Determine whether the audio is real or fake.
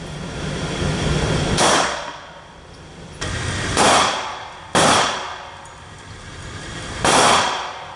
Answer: real